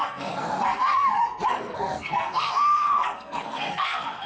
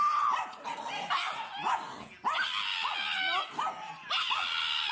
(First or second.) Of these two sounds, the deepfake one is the first